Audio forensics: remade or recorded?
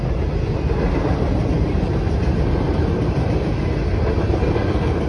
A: recorded